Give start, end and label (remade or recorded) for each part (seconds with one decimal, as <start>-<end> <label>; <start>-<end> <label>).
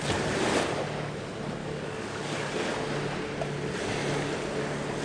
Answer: 0.0-1.6 recorded; 1.6-2.5 remade; 2.5-5.0 recorded